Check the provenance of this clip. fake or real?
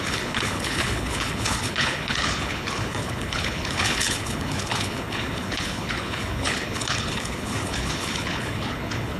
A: fake